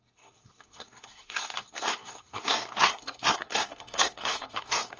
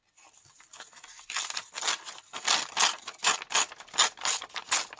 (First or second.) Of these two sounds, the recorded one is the second